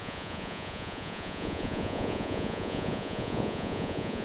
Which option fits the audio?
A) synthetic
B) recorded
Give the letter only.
A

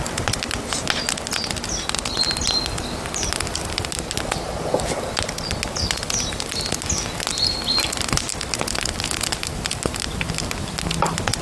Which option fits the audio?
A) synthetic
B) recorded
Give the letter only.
B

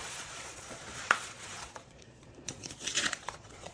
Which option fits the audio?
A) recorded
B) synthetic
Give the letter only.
B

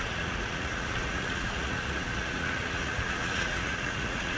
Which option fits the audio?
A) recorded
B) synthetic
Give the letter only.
B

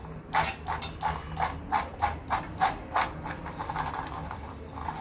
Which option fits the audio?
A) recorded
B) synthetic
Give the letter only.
A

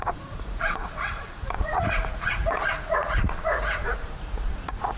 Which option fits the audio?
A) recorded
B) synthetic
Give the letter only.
B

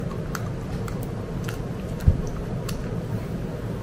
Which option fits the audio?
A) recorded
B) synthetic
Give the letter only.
A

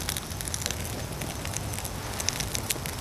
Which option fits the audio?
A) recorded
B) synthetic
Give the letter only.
A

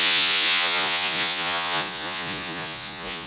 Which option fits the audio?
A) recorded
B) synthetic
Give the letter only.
B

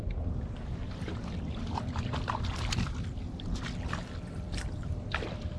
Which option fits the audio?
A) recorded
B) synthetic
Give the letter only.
A